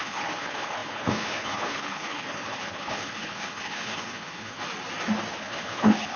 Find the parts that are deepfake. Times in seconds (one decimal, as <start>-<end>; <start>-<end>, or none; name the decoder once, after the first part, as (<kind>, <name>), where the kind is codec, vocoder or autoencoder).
0.0-4.6 (codec, HILCodec); 5.3-6.2